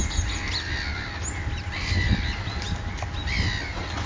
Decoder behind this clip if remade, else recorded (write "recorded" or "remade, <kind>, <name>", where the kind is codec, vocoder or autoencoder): recorded